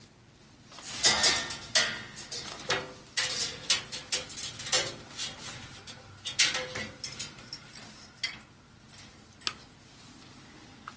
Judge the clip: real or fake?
real